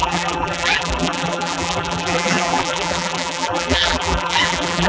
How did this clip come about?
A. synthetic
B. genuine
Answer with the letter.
A